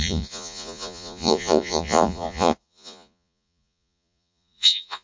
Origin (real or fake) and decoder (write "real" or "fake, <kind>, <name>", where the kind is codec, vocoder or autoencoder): fake, vocoder, Vocos